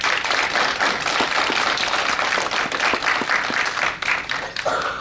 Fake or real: real